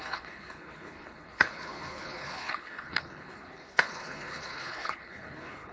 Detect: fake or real fake